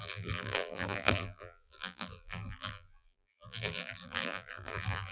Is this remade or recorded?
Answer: remade